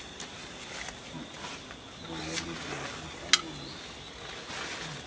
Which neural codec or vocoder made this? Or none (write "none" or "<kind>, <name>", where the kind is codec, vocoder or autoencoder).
none